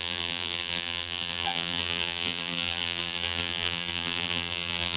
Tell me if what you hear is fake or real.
fake